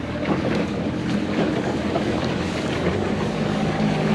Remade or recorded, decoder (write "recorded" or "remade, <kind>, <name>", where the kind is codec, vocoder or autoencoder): remade, codec, DAC